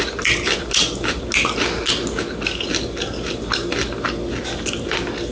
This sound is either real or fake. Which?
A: real